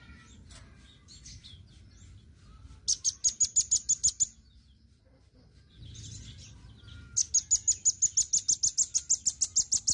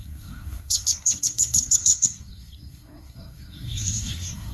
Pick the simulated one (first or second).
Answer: second